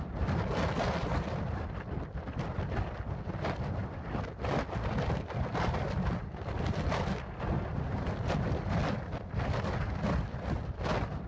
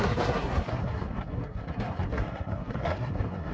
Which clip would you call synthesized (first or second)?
second